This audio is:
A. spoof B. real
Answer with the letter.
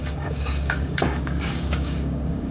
A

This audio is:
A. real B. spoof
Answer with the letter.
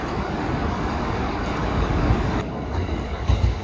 B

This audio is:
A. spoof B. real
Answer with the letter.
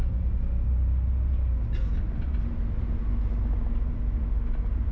B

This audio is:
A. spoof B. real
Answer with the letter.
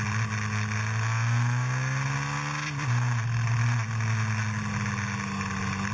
B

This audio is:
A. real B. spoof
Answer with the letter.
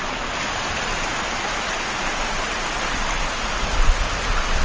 A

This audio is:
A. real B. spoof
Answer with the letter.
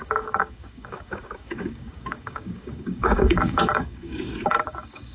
B